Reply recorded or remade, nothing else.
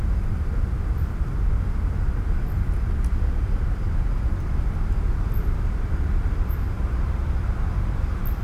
recorded